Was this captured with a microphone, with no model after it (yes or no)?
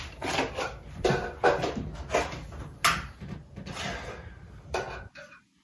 yes